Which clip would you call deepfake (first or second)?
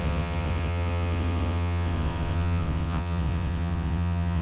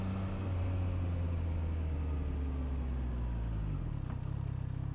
first